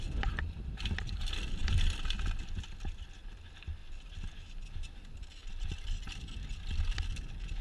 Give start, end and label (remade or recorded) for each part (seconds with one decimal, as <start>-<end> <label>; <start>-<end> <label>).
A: 0.0-7.6 recorded